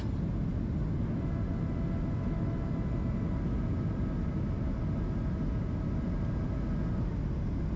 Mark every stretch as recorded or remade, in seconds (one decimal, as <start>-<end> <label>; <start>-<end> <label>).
0.0-7.8 recorded